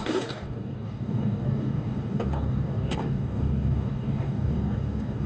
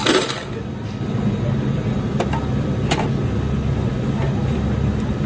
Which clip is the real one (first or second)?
second